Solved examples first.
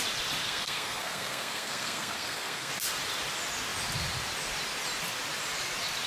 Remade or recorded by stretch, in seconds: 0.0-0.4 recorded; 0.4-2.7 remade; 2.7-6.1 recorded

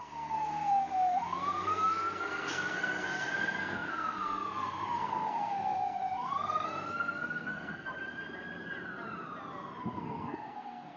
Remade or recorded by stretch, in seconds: 0.0-7.9 remade; 7.9-9.8 recorded; 9.8-11.0 remade

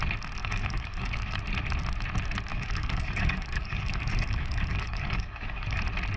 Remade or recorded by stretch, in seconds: 0.0-0.4 recorded; 0.4-1.4 remade; 1.4-2.5 recorded; 2.5-5.8 remade; 5.8-6.2 recorded

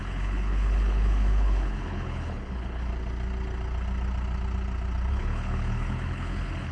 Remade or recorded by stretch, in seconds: 0.0-2.9 remade; 2.9-5.1 recorded; 5.1-6.7 remade

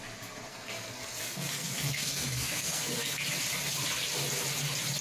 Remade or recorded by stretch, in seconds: 0.0-0.5 recorded; 0.5-3.2 remade; 3.2-5.0 recorded

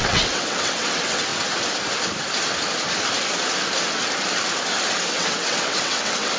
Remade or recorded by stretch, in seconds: 0.0-1.3 remade; 1.3-5.1 recorded; 5.1-6.4 remade

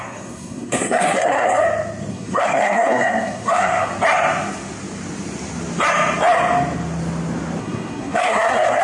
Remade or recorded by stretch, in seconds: 0.0-1.6 remade; 1.6-2.1 recorded; 2.1-3.9 remade; 3.9-7.6 recorded; 7.6-8.8 remade